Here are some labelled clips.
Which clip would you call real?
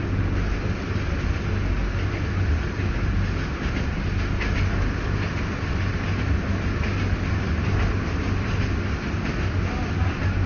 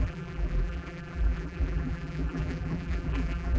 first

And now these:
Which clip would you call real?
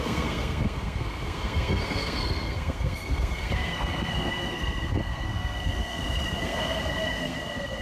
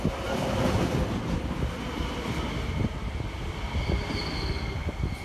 second